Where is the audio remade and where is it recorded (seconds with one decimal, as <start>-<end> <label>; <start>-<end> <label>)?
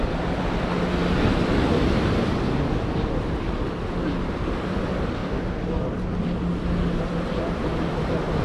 0.0-8.4 recorded